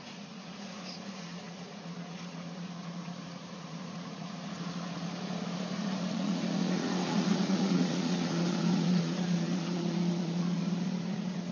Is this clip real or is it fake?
fake